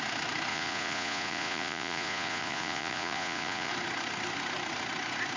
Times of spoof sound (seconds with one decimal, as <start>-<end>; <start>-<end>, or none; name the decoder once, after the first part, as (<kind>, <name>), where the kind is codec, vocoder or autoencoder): 0.5-3.7 (vocoder, Vocos)